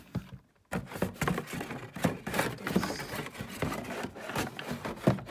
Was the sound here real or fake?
real